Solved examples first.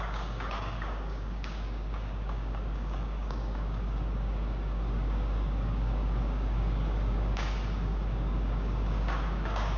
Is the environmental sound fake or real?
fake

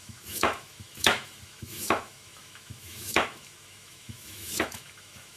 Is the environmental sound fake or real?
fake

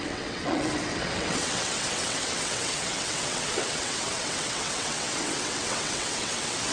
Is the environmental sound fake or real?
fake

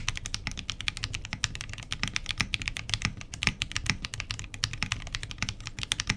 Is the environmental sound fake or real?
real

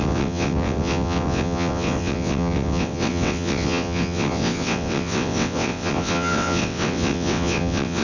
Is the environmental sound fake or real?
fake